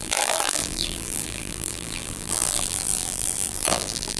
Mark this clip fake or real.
fake